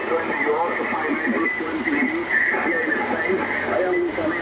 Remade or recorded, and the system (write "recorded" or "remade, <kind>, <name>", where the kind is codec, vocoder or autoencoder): recorded